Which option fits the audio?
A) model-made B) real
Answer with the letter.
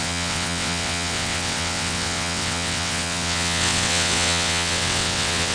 A